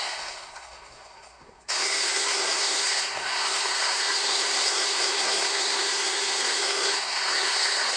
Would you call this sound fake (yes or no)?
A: yes